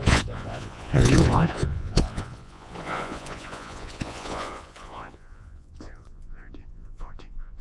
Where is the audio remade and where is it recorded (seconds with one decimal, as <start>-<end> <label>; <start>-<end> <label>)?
0.0-7.6 remade

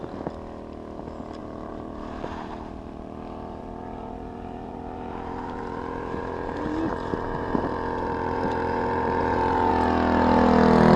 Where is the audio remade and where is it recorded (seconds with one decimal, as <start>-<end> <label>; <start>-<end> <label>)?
0.0-1.4 recorded; 1.4-6.2 remade; 6.2-6.9 recorded; 6.9-9.7 remade; 9.7-11.0 recorded

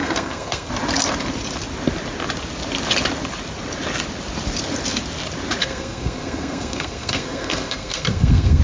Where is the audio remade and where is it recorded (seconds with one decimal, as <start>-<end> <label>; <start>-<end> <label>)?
0.0-0.7 remade; 0.7-5.6 recorded; 5.6-8.6 remade

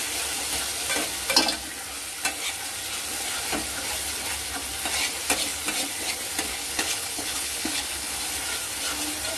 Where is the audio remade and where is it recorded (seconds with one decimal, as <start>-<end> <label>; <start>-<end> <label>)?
0.0-6.5 recorded; 6.5-8.2 remade; 8.2-9.4 recorded

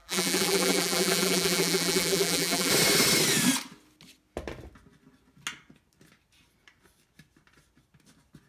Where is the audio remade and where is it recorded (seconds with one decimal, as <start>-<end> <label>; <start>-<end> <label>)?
0.0-2.7 remade; 2.7-8.5 recorded

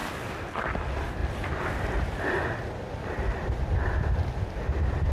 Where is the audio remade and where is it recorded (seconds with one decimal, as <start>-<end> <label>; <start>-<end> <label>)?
0.0-1.2 recorded; 1.2-4.3 remade; 4.3-5.1 recorded

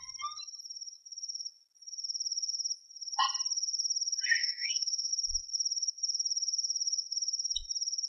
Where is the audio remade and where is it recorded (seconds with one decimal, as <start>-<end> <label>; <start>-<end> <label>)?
0.0-4.4 recorded; 4.4-5.1 remade; 5.1-8.1 recorded

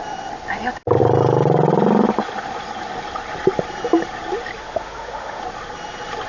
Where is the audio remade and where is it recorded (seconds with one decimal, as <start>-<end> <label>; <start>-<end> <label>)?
0.0-4.6 recorded; 4.6-5.4 remade; 5.4-6.3 recorded